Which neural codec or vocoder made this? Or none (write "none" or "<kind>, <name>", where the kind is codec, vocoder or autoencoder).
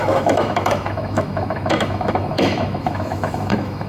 autoencoder, DAC-VAE